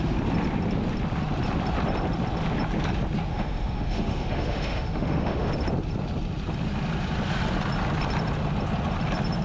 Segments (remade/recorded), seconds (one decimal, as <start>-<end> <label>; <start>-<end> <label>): 0.0-3.3 recorded; 3.3-5.5 remade; 5.5-9.4 recorded